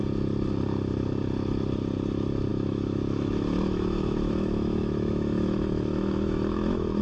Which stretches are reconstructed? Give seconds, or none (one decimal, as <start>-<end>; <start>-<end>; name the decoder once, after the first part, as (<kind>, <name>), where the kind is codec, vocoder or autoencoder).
2.5-7.0 (autoencoder, DAC-VAE)